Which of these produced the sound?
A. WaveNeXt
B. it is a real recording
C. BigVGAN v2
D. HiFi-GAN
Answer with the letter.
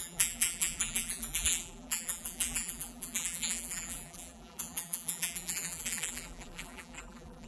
C